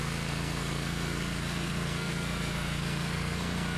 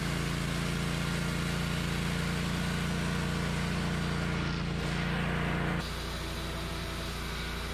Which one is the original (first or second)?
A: second